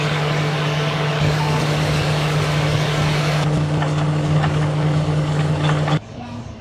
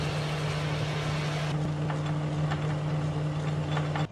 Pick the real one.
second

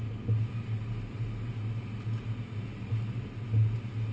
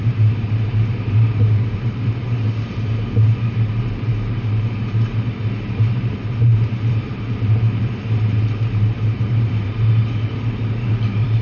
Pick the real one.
first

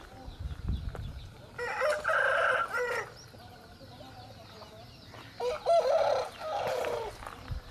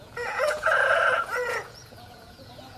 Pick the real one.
first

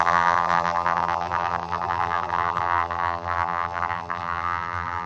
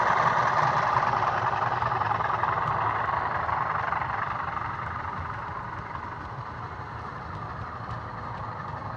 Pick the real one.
second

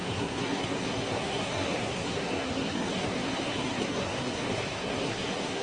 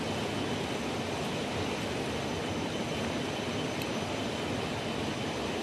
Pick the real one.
second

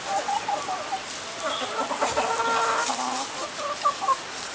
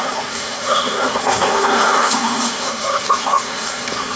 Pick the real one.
first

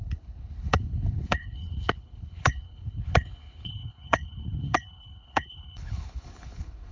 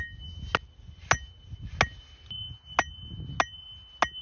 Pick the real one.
second